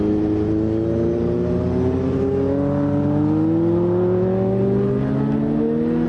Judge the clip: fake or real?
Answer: real